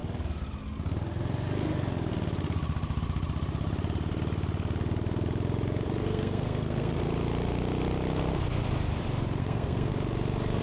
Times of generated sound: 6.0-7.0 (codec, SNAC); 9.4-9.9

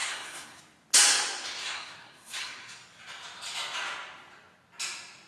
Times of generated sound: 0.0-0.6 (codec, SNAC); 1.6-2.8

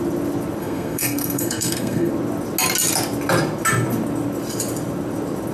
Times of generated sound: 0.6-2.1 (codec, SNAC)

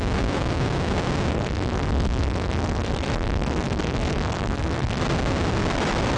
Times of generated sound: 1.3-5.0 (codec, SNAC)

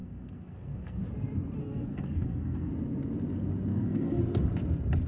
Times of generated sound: 0.0-1.0 (codec, SNAC); 1.6-2.7; 3.7-4.2